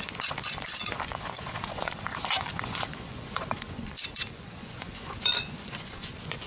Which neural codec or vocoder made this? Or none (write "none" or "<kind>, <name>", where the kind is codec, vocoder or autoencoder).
vocoder, Vocos